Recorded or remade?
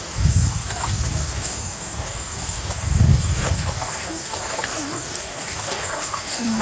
remade